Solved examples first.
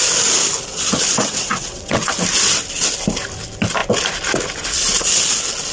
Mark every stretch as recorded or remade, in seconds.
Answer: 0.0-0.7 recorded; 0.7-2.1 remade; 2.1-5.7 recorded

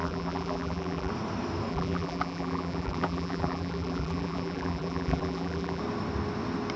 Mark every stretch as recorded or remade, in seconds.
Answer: 0.0-1.1 remade; 1.1-1.7 recorded; 1.7-5.8 remade; 5.8-6.8 recorded

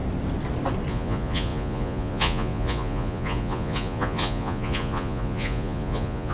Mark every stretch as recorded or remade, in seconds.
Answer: 0.0-0.9 recorded; 0.9-6.3 remade

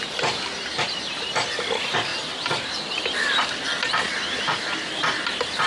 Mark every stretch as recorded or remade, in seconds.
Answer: 0.0-2.1 recorded; 2.1-5.7 remade